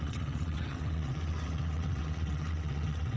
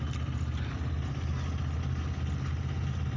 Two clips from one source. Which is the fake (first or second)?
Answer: first